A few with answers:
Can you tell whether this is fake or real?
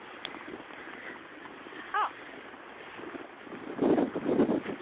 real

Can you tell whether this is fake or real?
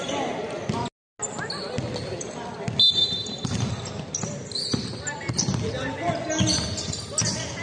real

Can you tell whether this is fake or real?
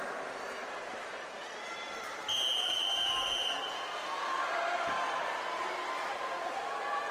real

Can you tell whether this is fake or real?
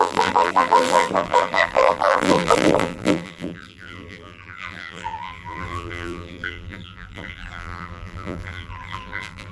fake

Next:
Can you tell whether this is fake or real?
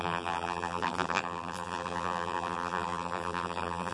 fake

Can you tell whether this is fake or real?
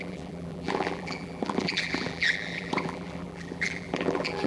fake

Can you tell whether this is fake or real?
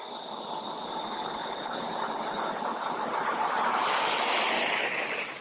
fake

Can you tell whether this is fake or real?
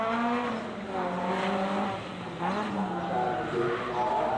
real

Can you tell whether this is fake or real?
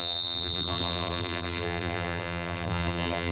fake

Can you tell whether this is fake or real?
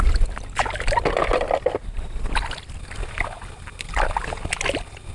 real